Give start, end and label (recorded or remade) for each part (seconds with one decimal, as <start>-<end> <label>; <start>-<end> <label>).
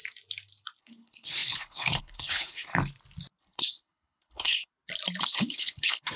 0.0-0.8 recorded; 0.8-2.7 remade; 2.7-3.4 recorded; 3.4-4.7 remade; 4.7-5.2 recorded; 5.2-6.2 remade